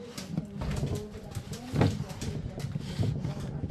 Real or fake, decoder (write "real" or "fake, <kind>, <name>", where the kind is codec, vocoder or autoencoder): fake, vocoder, BigVGAN v2